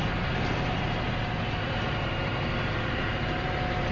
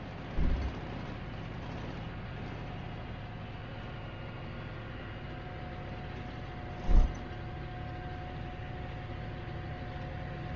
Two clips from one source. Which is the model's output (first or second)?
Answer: first